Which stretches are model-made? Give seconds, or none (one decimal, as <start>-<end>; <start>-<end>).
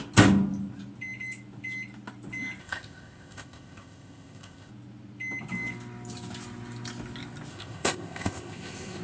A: 2.6-4.7; 7.5-9.0